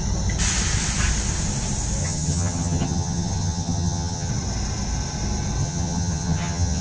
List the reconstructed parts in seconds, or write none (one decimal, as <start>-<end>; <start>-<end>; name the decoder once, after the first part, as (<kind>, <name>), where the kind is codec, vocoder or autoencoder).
2.0-4.3 (vocoder, HiFi-GAN); 5.6-6.8